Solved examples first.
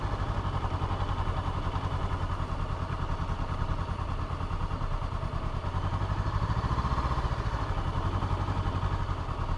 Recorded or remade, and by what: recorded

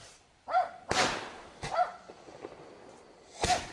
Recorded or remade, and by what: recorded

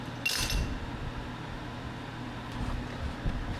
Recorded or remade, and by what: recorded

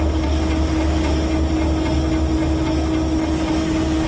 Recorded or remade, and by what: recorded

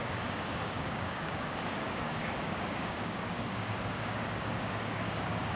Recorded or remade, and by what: remade, codec, DAC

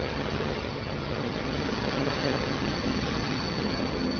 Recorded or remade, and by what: remade, vocoder, HiFi-GAN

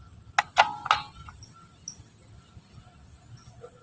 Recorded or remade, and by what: recorded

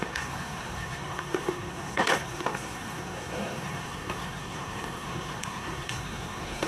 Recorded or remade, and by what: remade, codec, SNAC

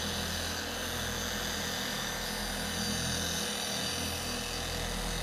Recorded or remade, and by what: recorded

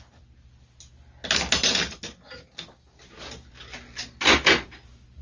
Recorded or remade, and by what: recorded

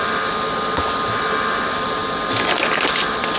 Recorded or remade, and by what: recorded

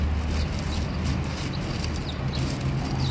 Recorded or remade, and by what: recorded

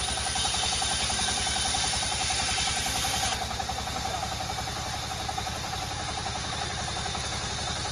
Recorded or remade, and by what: remade, vocoder, BigVGAN v2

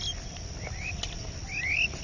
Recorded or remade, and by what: recorded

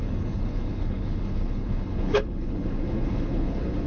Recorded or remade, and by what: remade, codec, HILCodec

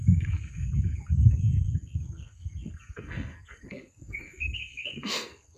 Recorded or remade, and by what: remade, codec, SNAC